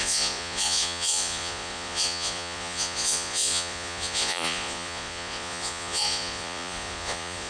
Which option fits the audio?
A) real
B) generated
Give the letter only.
B